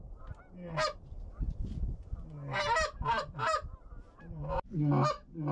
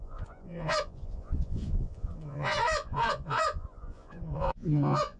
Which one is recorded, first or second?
first